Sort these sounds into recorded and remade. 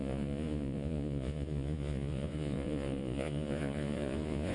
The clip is remade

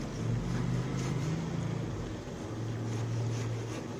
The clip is recorded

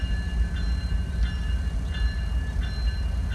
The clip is recorded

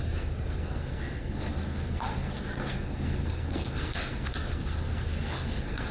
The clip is remade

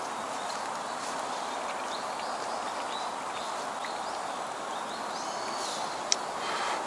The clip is recorded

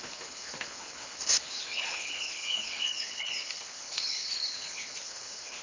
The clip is remade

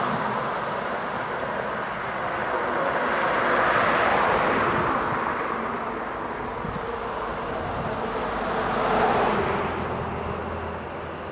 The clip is recorded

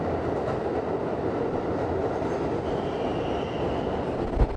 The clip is recorded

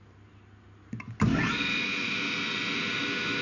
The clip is recorded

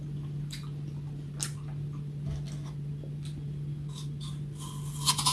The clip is recorded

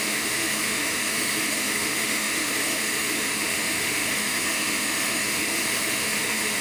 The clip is remade